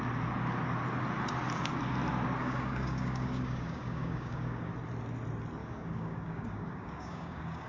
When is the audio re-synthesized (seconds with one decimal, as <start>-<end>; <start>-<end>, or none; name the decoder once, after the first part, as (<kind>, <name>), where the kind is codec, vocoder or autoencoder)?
2.4-4.7 (codec, DAC); 5.6-7.7